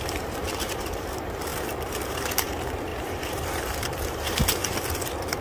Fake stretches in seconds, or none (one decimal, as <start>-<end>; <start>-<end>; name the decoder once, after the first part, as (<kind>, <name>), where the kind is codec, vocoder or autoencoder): 0.0-1.5 (vocoder, BigVGAN v2); 2.1-4.6